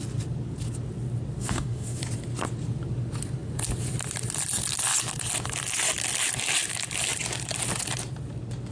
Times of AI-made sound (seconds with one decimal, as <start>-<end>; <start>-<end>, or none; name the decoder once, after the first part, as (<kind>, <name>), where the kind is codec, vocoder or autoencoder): 1.4-2.0 (autoencoder, DAC-VAE)